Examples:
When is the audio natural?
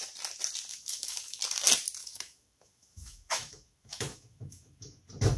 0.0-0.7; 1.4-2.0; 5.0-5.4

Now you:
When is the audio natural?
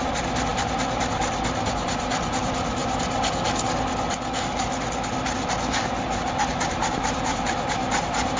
2.8-6.6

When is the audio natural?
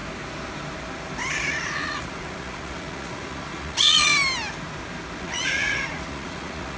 0.0-1.5; 4.1-5.2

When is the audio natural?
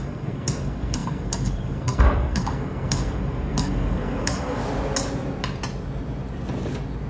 4.6-7.1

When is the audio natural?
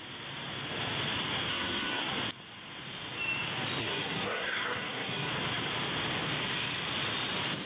0.0-1.5; 2.1-3.8; 5.3-7.7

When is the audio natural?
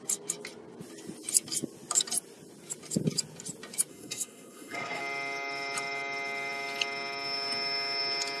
0.0-3.9; 5.0-8.4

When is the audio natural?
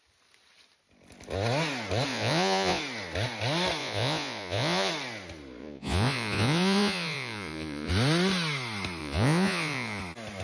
0.0-2.1; 2.8-3.8; 4.9-5.6; 7.9-9.0; 10.0-10.4